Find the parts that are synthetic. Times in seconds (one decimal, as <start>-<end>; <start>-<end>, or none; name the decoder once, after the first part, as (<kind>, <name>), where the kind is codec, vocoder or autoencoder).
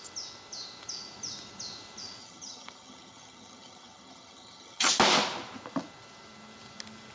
2.2-4.9 (vocoder, HiFi-GAN)